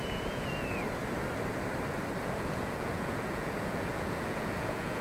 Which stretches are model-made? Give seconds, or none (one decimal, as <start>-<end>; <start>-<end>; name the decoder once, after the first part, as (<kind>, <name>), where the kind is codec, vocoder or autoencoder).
0.0-0.8 (vocoder, Vocos); 2.2-5.0